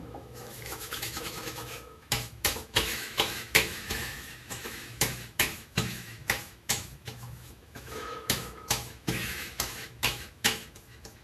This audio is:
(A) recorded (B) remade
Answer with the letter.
B